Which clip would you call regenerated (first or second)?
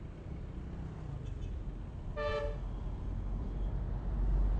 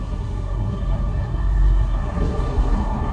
second